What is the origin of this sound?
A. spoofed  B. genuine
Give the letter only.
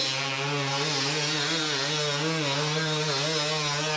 B